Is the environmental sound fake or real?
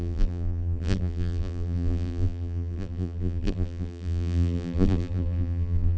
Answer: fake